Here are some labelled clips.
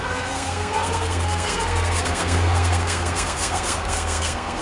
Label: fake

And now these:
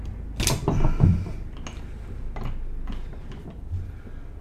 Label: real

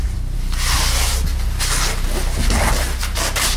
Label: real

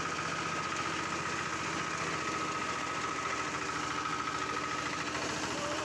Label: real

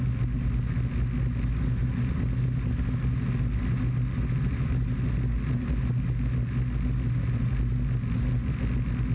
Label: real